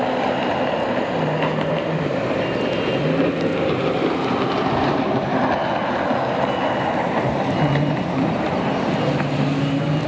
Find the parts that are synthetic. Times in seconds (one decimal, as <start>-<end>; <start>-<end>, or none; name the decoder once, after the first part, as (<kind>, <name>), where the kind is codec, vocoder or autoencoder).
none